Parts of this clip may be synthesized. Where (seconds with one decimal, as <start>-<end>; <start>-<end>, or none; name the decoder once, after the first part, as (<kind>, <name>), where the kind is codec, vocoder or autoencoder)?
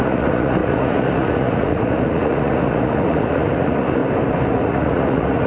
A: 0.0-4.0 (vocoder, Vocos); 4.5-5.5